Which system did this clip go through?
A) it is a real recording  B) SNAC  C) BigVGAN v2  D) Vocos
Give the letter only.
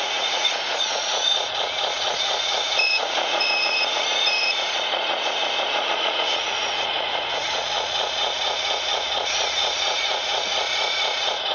D